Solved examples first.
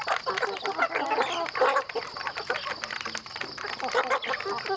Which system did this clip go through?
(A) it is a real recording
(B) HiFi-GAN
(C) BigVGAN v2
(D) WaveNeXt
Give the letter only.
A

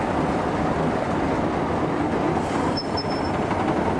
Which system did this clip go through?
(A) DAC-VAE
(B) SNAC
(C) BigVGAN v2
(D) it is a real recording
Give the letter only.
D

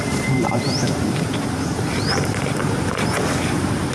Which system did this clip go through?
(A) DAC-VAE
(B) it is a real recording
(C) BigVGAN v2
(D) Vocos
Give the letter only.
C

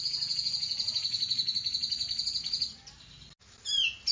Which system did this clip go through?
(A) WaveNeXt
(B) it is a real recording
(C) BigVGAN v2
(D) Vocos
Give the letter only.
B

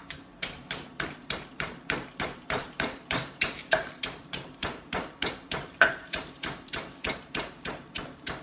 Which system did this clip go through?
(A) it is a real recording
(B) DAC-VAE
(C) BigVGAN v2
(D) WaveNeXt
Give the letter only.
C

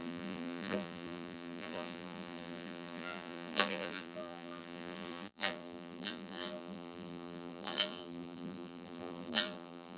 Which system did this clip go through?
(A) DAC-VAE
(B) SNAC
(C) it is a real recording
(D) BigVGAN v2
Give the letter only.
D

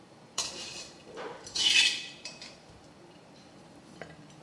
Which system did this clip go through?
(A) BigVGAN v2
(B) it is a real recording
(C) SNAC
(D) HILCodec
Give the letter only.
A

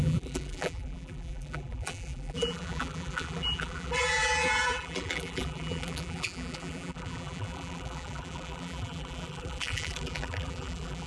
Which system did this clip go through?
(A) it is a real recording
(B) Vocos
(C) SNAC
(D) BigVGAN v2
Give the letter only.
D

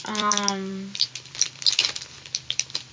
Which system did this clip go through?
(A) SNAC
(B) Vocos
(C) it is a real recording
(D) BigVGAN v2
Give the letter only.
D